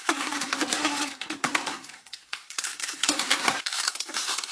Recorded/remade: remade